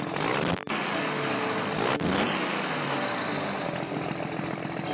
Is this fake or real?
real